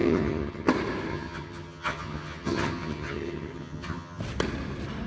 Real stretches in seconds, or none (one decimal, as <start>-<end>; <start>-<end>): 0.7-1.1; 4.2-5.1